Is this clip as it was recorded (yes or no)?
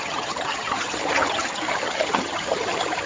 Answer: no